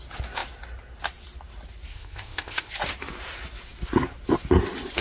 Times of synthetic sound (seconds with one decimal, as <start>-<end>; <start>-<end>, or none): 1.9-2.7